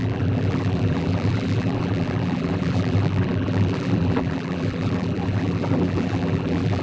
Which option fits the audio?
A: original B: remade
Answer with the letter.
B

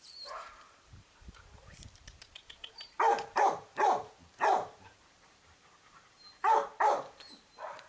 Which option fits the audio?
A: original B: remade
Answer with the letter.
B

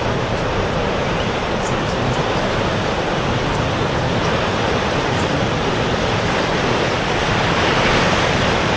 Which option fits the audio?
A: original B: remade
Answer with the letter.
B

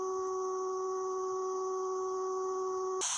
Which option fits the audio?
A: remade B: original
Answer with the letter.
B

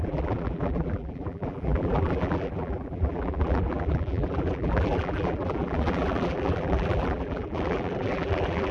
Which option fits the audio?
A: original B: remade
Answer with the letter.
B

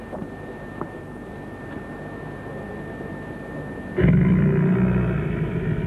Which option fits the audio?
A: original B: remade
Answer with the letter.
A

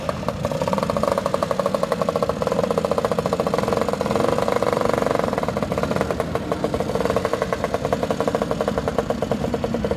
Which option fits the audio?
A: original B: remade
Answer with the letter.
B